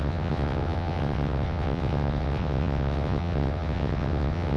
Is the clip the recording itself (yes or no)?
no